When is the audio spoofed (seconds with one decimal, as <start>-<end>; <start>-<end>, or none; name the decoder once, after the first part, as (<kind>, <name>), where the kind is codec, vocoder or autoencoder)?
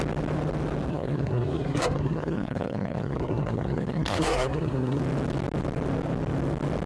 0.9-5.0 (codec, SNAC)